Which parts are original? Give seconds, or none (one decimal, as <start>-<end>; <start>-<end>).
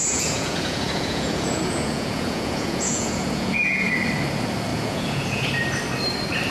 3.9-4.7; 5.5-6.5